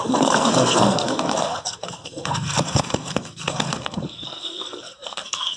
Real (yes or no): no